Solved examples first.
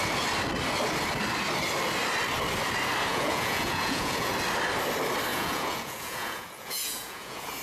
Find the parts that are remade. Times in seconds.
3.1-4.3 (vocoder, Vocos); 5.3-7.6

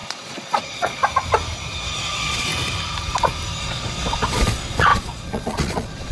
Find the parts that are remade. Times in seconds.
0.0-1.0 (vocoder, Vocos); 1.8-2.5; 3.6-6.1

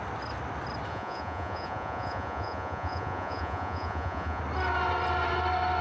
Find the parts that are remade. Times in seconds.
0.9-4.4 (vocoder, Vocos)